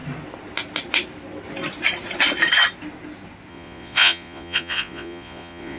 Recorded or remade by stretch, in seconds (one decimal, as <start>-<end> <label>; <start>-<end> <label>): 0.0-3.5 recorded; 3.5-5.8 remade